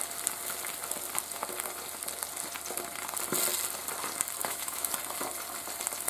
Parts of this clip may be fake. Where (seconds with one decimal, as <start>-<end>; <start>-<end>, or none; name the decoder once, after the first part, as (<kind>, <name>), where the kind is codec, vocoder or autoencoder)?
4.4-4.9 (autoencoder, DAC-VAE)